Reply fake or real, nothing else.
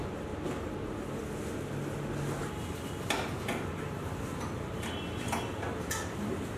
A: real